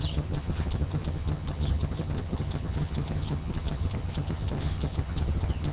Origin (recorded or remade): remade